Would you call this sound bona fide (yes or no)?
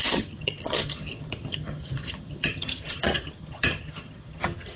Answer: no